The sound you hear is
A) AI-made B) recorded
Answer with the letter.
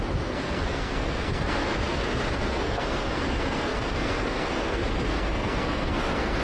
A